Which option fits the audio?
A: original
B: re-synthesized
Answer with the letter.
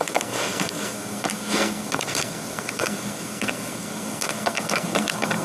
B